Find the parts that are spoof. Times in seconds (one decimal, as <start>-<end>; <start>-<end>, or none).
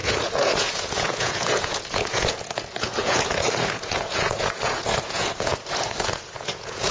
0.0-6.9